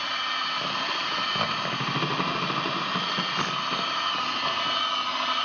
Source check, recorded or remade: recorded